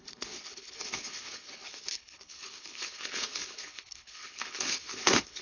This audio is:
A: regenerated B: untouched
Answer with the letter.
A